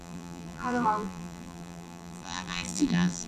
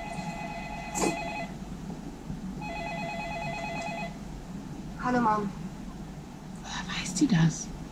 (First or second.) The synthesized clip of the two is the first